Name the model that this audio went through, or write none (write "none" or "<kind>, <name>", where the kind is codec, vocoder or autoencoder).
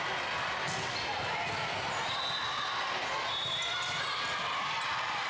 none